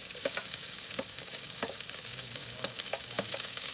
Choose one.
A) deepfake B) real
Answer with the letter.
A